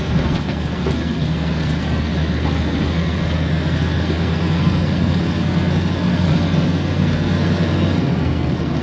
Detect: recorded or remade remade